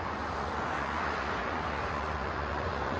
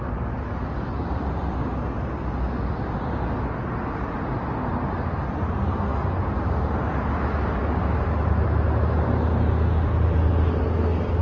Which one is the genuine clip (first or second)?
second